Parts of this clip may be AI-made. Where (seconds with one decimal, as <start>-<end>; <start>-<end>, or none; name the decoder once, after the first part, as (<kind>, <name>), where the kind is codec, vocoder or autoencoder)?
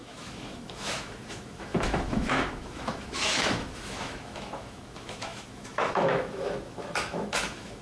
0.0-7.8 (autoencoder, DAC-VAE)